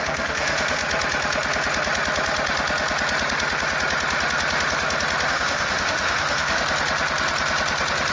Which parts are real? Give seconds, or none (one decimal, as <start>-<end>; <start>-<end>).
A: 0.8-5.3; 6.6-8.1